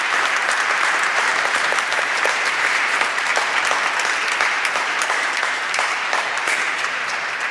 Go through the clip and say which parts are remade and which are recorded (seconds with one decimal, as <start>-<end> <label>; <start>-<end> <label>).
0.0-3.3 remade; 3.3-4.5 recorded; 4.5-7.5 remade